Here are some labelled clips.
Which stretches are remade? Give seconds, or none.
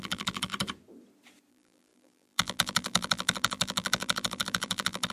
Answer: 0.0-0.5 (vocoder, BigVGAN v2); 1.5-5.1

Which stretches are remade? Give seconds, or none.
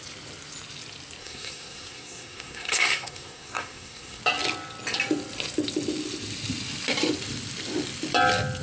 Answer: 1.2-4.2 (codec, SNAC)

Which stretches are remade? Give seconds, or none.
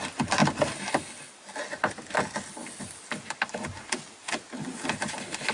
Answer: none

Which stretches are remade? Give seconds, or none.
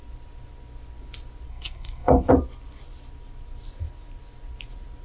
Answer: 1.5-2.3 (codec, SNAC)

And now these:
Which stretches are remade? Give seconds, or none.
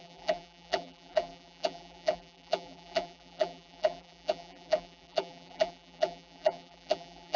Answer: 0.0-7.4 (vocoder, BigVGAN v2)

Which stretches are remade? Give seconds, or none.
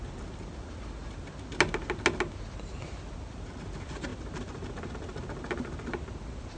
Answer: none